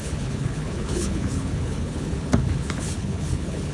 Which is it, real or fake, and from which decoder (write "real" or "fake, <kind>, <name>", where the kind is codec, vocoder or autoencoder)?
fake, codec, HILCodec